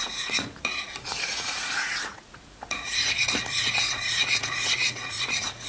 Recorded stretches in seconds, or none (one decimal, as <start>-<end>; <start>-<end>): none